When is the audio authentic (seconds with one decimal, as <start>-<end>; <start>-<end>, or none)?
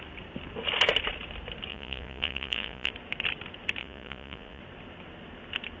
0.0-1.7; 2.9-3.8; 4.6-5.8